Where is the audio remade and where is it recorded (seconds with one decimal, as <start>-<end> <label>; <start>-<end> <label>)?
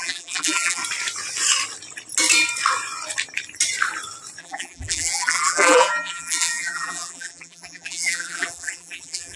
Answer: 0.0-0.8 remade; 0.8-4.4 recorded; 4.4-9.4 remade